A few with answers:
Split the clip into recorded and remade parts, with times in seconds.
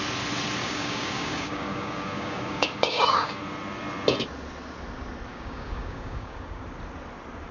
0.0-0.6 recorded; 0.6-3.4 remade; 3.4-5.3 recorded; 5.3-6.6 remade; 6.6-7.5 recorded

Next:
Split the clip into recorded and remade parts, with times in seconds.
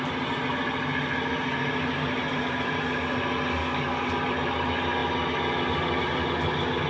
0.0-3.6 recorded; 3.6-4.1 remade; 4.1-6.9 recorded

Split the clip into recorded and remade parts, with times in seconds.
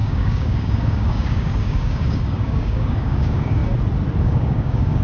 0.0-3.6 remade; 3.6-4.2 recorded; 4.2-5.0 remade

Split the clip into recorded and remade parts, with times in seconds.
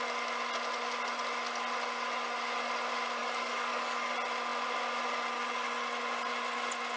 0.0-3.2 recorded; 3.2-4.1 remade; 4.1-7.0 recorded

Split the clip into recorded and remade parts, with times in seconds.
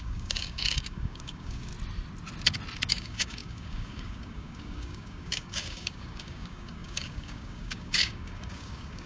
0.0-1.7 remade; 1.7-2.9 recorded; 2.9-9.1 remade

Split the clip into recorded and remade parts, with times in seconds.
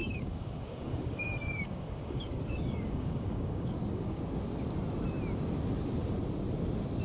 0.0-4.2 remade; 4.2-7.0 recorded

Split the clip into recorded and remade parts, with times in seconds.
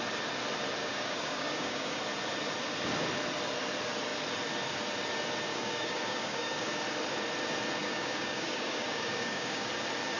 0.0-0.8 recorded; 0.8-2.0 remade; 2.0-5.5 recorded; 5.5-6.7 remade; 6.7-7.8 recorded; 7.8-9.7 remade; 9.7-10.2 recorded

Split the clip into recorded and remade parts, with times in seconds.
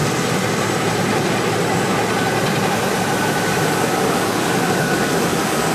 0.0-3.4 recorded; 3.4-5.7 remade